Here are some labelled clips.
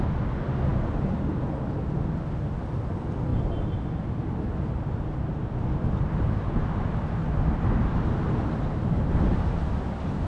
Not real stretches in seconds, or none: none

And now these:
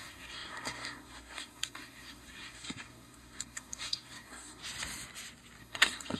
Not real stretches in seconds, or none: 0.0-4.6 (codec, SNAC); 5.6-6.2

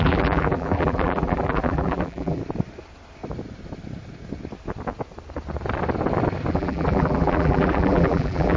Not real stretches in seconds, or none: 0.0-2.4 (vocoder, BigVGAN v2); 6.5-8.6

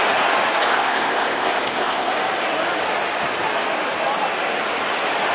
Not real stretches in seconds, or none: 0.6-2.1 (codec, ZipCodec)

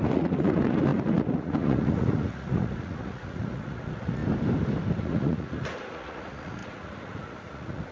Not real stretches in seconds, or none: 0.0-4.2 (vocoder, Vocos); 4.9-7.9

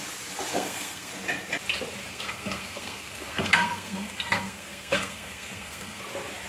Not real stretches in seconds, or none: 0.5-1.1 (codec, SNAC); 2.1-6.0

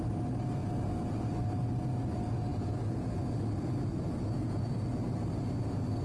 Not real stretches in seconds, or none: none